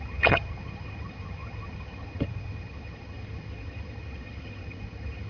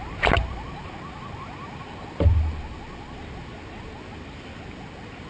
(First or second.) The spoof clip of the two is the first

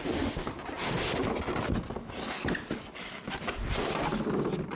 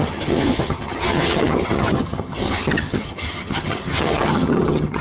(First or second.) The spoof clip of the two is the second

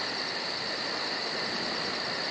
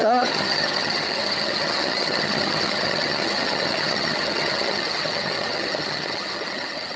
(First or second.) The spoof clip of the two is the second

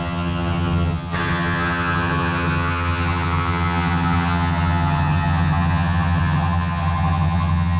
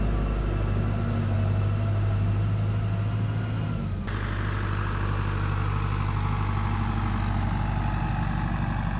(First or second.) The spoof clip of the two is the first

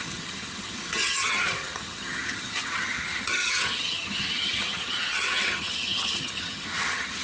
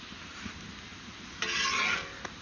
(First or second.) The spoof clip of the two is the first